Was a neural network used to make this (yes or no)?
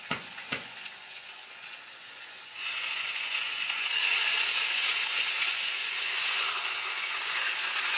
yes